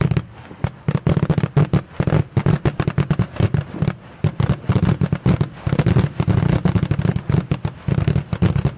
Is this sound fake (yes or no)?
no